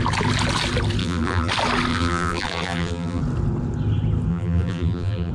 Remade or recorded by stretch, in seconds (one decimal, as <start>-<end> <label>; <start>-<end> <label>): 0.0-1.0 recorded; 1.0-1.5 remade; 1.5-1.9 recorded; 1.9-3.2 remade; 3.2-4.3 recorded; 4.3-5.3 remade